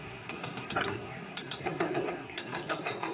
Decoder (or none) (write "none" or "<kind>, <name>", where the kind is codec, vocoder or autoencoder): codec, SNAC